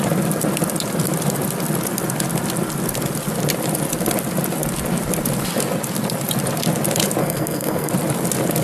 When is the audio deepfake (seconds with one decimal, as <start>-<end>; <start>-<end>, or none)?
7.2-7.9